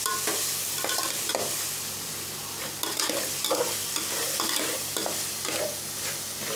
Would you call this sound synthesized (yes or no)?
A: yes